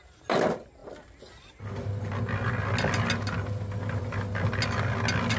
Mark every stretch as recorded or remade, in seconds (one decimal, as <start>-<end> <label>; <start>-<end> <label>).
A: 0.0-5.4 recorded